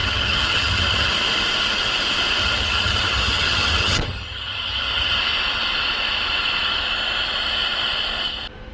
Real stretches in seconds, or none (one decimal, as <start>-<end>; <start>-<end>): 1.1-2.4; 5.2-8.7